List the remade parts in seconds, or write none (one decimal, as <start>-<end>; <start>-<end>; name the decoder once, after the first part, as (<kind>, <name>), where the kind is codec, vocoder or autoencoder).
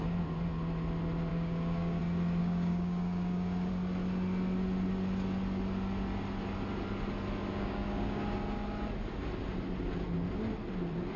1.3-2.0 (codec, DAC); 2.4-3.7; 7.5-8.2